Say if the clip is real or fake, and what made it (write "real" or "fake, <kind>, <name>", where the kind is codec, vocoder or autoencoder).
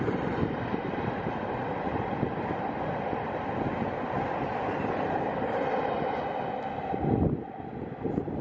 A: real